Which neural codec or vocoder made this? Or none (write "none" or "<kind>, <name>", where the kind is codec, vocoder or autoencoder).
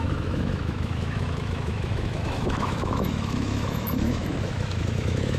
autoencoder, DAC-VAE